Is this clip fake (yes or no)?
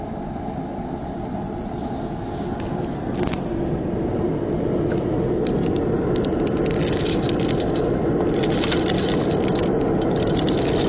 no